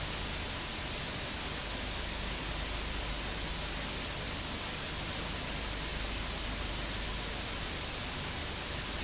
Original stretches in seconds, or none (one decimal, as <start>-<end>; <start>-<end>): 0.0-9.0